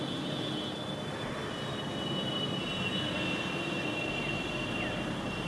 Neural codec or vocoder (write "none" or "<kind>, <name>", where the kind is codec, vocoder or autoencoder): none